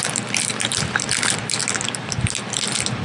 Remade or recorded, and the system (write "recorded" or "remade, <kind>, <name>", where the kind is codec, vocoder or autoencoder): recorded